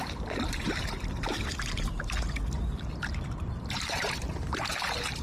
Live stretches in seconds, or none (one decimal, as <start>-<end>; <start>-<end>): 2.4-3.6